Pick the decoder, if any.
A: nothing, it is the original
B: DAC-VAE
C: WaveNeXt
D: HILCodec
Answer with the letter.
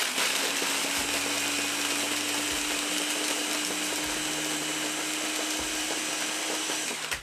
A